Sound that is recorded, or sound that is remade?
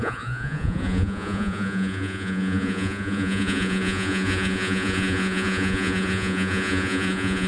remade